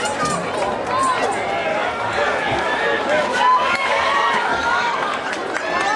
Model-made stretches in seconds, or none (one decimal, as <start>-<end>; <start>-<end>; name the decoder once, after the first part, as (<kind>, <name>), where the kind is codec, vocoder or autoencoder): 1.7-5.3 (codec, DAC)